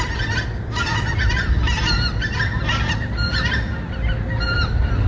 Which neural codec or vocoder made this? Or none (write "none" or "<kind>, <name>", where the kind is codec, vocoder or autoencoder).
none